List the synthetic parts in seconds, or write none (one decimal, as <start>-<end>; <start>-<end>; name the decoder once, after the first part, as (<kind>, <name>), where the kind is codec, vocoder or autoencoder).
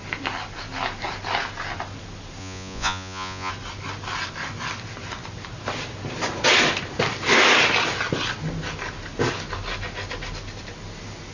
2.4-3.5 (vocoder, Vocos)